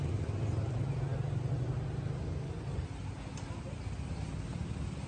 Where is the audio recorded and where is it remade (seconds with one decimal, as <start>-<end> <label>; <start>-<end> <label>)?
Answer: 0.0-5.1 recorded